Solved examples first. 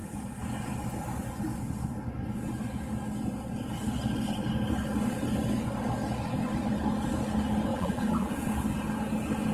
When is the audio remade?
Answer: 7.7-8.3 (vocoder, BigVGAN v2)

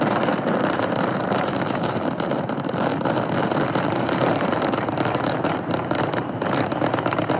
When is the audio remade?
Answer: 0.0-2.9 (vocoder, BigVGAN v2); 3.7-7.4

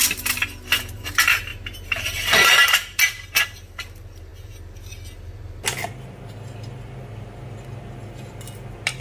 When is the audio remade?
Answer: 1.5-3.4 (vocoder, BigVGAN v2)